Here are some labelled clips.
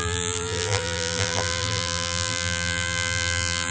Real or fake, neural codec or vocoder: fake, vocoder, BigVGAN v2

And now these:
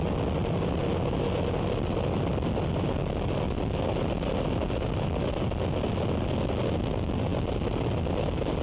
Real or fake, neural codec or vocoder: real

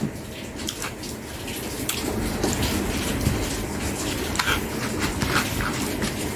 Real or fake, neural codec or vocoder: real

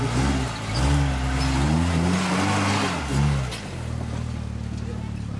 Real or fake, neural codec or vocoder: real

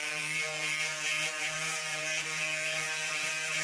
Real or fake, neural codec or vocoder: fake, vocoder, Vocos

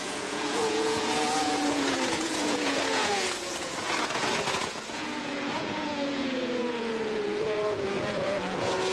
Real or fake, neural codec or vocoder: fake, vocoder, Vocos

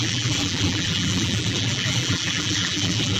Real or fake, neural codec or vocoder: fake, vocoder, BigVGAN v2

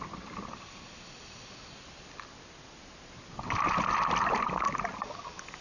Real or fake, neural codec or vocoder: real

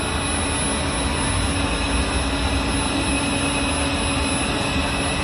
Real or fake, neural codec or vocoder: real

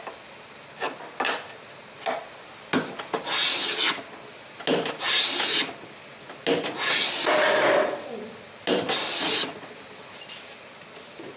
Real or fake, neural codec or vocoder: real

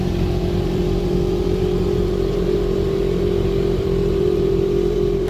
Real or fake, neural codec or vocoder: fake, vocoder, BigVGAN v2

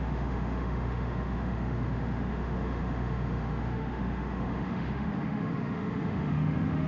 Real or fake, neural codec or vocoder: fake, autoencoder, DAC-VAE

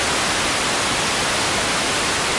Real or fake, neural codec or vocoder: real